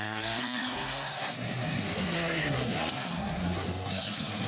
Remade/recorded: remade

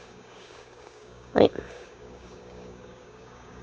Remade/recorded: remade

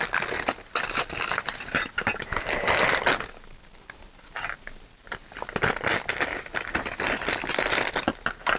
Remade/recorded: recorded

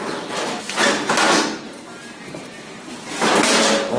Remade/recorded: recorded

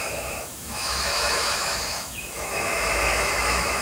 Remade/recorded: remade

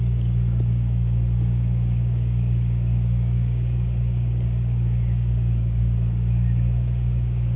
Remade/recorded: remade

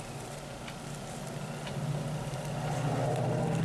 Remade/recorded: recorded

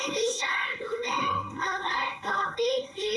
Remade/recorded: remade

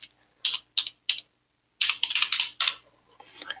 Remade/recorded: recorded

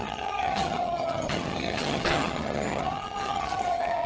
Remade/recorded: remade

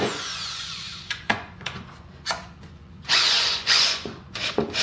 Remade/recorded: remade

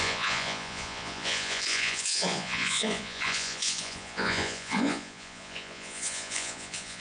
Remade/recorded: remade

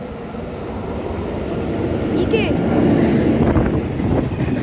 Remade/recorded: recorded